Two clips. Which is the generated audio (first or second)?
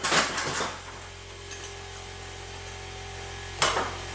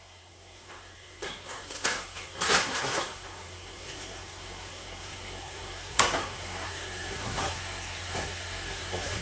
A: second